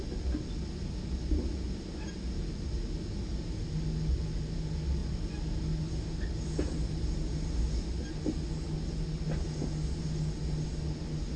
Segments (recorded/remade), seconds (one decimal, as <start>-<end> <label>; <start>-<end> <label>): 0.0-11.4 recorded